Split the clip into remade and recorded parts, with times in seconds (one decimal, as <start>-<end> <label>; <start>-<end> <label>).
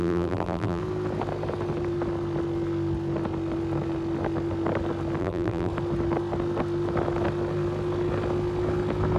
0.0-0.8 remade; 0.8-5.2 recorded; 5.2-5.7 remade; 5.7-9.2 recorded